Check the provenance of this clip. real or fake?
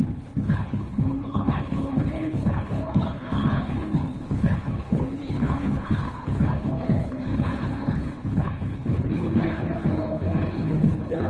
fake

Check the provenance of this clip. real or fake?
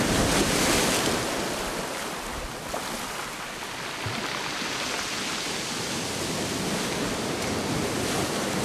real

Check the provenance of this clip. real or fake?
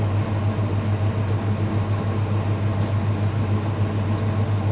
real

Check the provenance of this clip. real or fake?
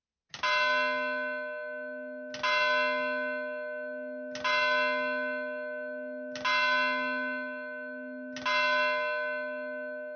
real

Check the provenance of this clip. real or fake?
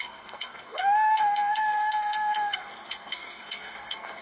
fake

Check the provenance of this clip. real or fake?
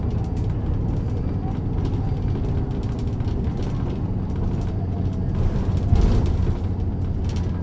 real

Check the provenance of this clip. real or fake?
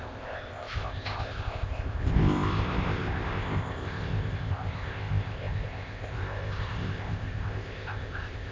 fake